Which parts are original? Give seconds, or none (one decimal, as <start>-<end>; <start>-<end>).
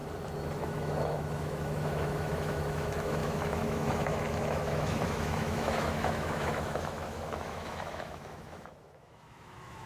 0.0-0.6